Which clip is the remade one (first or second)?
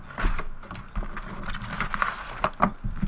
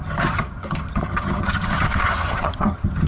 second